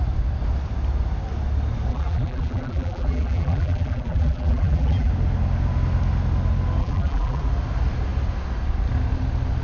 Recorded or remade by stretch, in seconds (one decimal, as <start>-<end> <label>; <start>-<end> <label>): 0.0-1.9 recorded; 1.9-5.1 remade; 5.1-6.8 recorded; 6.8-7.4 remade; 7.4-9.6 recorded